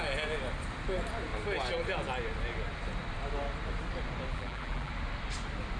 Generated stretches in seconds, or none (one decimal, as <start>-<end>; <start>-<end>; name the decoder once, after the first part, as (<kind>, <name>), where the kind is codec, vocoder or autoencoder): 4.3-4.9 (vocoder, BigVGAN v2)